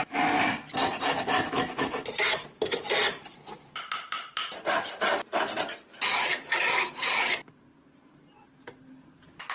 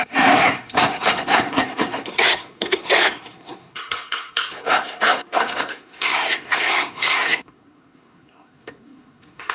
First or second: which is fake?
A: second